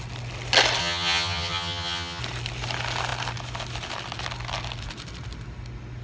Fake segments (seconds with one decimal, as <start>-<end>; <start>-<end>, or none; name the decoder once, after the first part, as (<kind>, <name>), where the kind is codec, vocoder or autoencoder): 0.8-2.2 (vocoder, HiFi-GAN)